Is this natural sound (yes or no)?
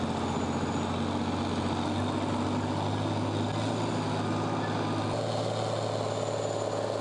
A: yes